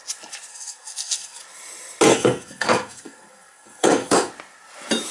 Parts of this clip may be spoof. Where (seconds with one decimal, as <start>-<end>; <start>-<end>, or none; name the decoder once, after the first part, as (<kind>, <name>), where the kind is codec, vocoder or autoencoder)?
0.5-1.4 (codec, SNAC); 2.1-4.3